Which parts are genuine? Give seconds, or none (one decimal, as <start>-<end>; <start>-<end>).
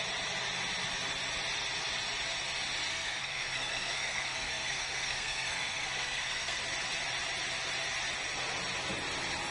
0.0-2.9; 6.6-9.5